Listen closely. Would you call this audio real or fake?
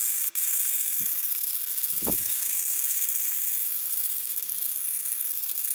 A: fake